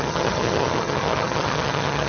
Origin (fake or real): fake